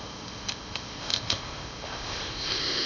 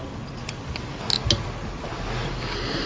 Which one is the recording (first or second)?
second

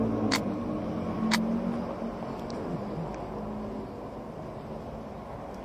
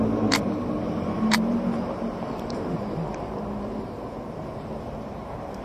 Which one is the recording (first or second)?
first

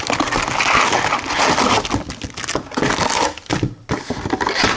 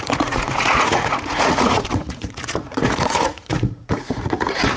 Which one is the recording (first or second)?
first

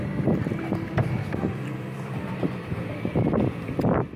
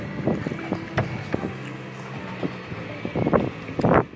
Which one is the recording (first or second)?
second